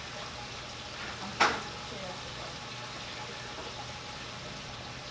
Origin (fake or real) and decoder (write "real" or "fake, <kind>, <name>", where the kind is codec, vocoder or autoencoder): real